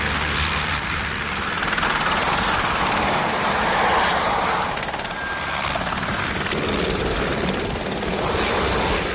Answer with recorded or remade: remade